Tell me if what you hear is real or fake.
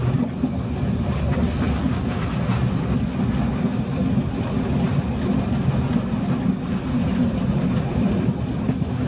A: real